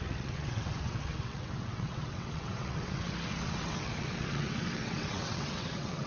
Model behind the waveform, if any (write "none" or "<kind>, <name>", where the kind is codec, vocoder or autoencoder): vocoder, WaveNeXt